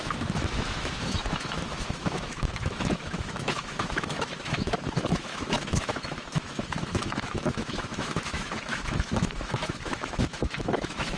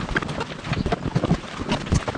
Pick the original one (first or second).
second